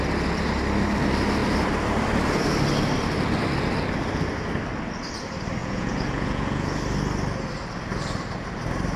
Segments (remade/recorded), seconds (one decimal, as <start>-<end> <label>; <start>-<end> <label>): 0.0-5.6 recorded; 5.6-6.8 remade; 6.8-9.0 recorded